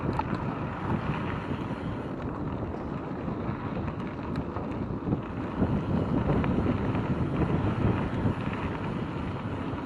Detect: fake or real real